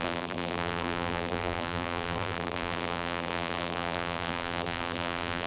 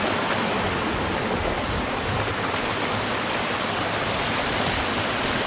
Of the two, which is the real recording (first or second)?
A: second